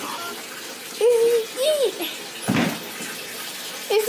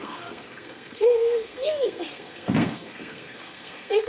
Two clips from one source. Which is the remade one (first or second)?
second